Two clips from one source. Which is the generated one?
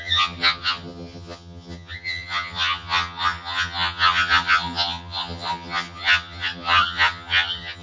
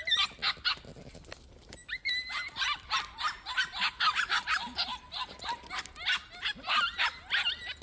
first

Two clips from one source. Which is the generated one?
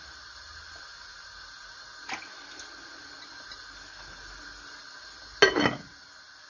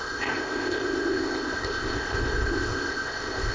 second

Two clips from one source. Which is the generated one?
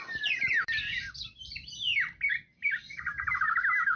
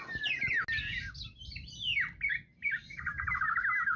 first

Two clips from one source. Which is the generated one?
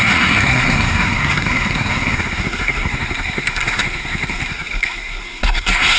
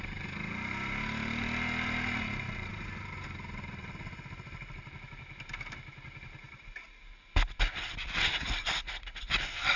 first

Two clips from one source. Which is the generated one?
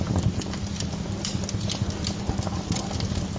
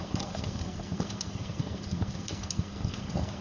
second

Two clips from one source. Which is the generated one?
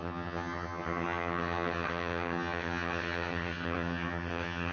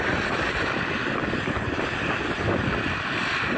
first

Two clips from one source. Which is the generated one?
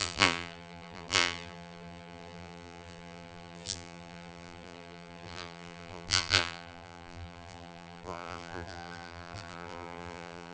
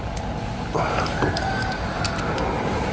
first